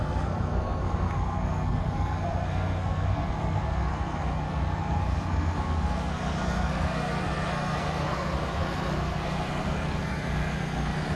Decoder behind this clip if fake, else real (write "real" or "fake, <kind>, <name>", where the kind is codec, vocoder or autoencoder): fake, codec, SNAC